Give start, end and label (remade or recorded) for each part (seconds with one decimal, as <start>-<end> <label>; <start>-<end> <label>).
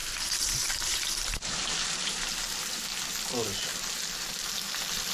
0.0-3.1 remade; 3.1-3.7 recorded; 3.7-4.3 remade; 4.3-5.1 recorded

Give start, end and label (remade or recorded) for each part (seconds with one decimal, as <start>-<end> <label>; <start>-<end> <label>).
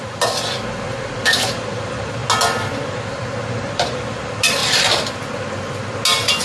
0.0-2.2 remade; 2.2-3.5 recorded; 3.5-4.6 remade; 4.6-6.4 recorded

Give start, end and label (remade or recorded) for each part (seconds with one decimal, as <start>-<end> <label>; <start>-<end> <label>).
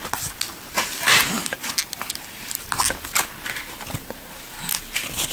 0.0-5.3 recorded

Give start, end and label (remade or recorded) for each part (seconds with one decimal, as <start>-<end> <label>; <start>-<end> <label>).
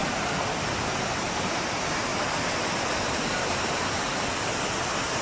0.0-2.1 recorded; 2.1-3.9 remade; 3.9-5.2 recorded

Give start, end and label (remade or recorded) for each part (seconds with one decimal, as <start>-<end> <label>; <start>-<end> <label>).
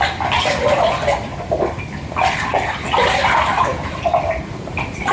0.0-1.3 recorded; 1.3-2.0 remade; 2.0-3.7 recorded; 3.7-5.1 remade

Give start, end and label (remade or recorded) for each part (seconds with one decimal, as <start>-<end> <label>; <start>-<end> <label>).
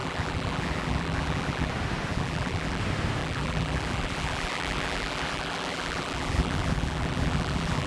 0.0-1.7 remade; 1.7-2.1 recorded; 2.1-2.8 remade; 2.8-3.2 recorded; 3.2-7.9 remade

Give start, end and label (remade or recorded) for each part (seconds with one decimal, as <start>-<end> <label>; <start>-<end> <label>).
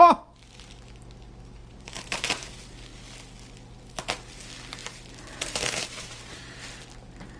0.0-1.6 recorded; 1.6-2.5 remade; 2.5-4.8 recorded; 4.8-6.4 remade; 6.4-7.4 recorded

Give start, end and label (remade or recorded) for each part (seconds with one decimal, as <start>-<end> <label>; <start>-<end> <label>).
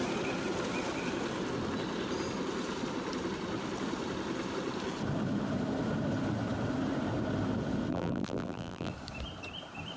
0.0-7.9 recorded; 7.9-8.9 remade; 8.9-10.0 recorded